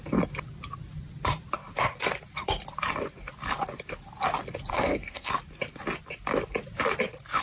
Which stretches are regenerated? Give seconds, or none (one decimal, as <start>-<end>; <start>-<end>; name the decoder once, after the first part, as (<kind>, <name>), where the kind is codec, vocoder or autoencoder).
4.7-5.3 (codec, SNAC)